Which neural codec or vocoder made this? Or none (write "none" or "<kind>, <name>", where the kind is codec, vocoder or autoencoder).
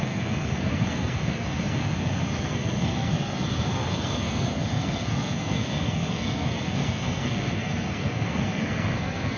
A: codec, SNAC